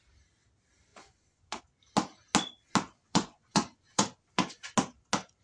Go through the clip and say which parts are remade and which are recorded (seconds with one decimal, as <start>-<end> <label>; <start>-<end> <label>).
0.0-0.9 recorded; 0.9-1.6 remade; 1.6-3.0 recorded; 3.0-4.6 remade; 4.6-5.4 recorded